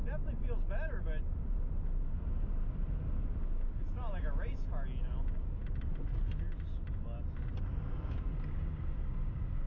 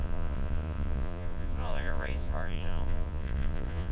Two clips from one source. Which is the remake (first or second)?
second